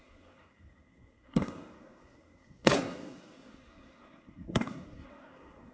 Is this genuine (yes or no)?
no